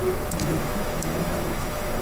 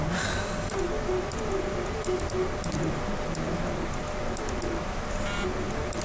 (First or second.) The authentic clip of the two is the second